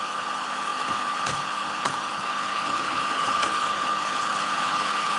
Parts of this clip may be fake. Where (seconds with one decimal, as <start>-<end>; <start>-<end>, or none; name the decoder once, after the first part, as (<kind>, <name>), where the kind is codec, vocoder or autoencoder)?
0.0-5.2 (codec, HILCodec)